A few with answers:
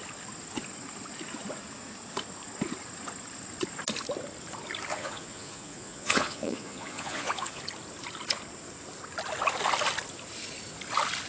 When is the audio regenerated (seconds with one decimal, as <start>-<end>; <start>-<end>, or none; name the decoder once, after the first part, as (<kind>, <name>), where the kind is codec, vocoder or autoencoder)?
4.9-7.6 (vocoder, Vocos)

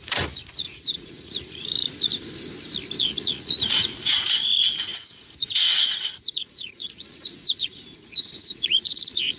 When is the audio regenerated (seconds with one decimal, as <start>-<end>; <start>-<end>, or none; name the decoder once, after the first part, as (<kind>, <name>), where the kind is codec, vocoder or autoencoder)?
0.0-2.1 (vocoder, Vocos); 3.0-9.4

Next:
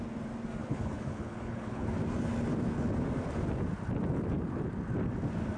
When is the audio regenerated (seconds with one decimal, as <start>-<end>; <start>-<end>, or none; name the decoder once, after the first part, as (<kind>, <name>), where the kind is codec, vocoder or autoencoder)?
0.6-1.9 (codec, HILCodec)

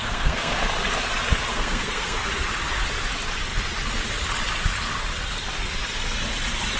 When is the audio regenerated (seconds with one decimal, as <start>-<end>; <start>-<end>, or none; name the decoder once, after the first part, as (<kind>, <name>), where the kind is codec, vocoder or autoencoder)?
0.0-0.6 (codec, SNAC); 1.5-2.3

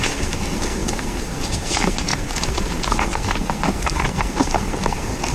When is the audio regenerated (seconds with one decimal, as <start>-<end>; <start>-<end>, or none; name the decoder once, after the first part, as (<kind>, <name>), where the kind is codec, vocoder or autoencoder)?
0.0-5.3 (codec, SNAC)